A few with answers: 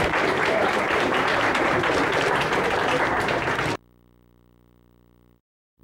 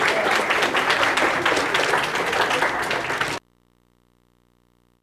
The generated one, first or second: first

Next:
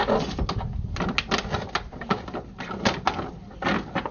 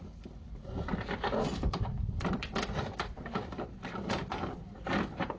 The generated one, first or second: second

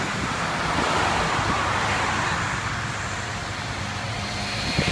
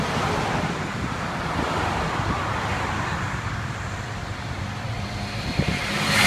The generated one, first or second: second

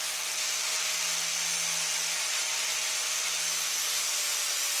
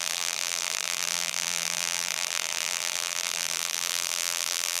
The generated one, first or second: second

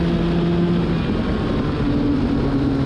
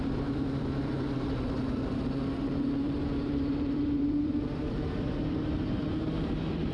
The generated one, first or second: second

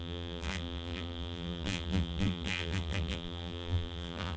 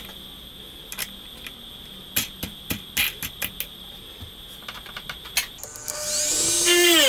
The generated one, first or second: first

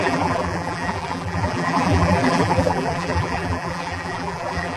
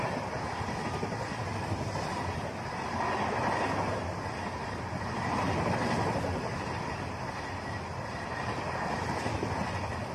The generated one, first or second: first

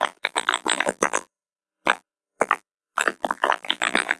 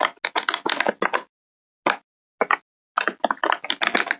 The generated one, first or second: first